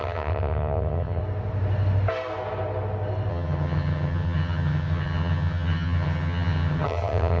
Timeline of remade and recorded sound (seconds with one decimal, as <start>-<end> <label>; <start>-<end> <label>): 0.0-1.2 remade; 1.2-3.3 recorded; 3.3-7.4 remade